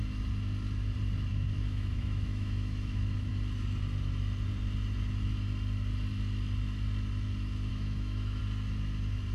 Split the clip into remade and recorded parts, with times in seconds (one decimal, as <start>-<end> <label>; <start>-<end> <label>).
0.0-1.3 recorded; 1.3-3.3 remade; 3.3-7.7 recorded; 7.7-8.4 remade; 8.4-9.3 recorded